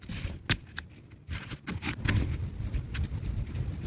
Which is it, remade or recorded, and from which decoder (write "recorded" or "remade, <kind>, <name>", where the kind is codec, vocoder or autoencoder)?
recorded